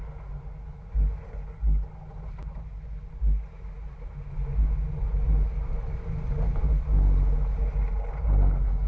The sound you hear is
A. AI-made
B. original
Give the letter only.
B